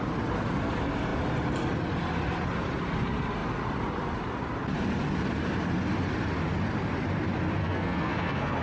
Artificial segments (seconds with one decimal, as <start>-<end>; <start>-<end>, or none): 7.6-8.6